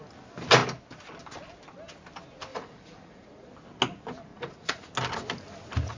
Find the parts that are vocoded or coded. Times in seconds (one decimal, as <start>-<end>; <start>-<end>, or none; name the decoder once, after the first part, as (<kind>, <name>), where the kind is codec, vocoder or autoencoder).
2.5-3.5 (vocoder, Vocos); 4.3-4.9